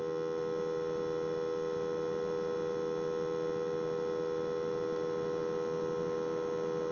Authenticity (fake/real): real